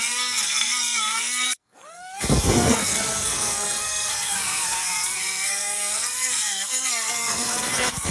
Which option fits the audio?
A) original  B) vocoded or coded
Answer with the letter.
B